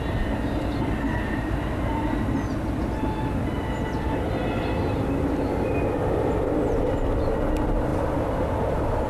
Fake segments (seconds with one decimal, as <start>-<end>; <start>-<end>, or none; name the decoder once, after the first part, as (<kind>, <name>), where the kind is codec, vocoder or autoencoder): none